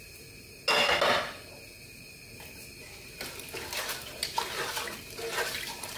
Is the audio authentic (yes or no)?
yes